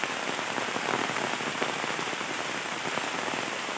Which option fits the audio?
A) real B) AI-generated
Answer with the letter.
A